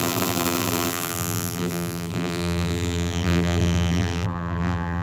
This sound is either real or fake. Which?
fake